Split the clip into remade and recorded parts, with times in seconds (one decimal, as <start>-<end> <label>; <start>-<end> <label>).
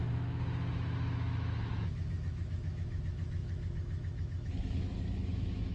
0.0-5.7 remade